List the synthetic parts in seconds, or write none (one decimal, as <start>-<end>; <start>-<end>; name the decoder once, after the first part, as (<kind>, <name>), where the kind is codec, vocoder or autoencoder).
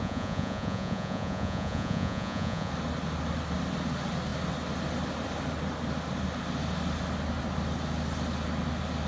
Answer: 0.0-2.7 (vocoder, Vocos)